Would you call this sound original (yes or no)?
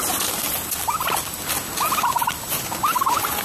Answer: yes